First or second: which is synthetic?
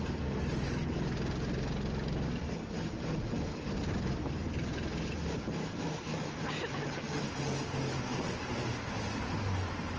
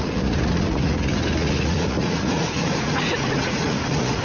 second